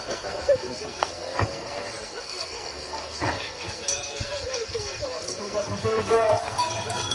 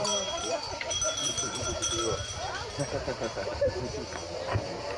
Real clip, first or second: second